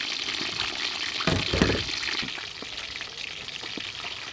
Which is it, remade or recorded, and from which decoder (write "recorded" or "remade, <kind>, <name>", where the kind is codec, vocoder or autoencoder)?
recorded